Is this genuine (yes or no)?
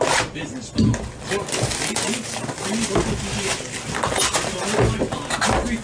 yes